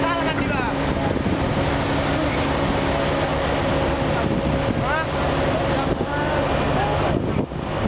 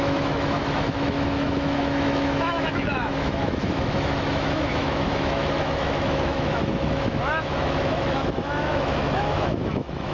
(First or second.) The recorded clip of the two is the first